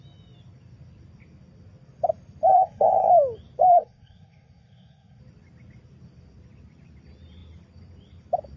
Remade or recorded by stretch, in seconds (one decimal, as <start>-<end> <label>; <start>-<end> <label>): 0.0-2.5 recorded; 2.5-3.1 remade; 3.1-3.7 recorded; 3.7-5.2 remade; 5.2-8.6 recorded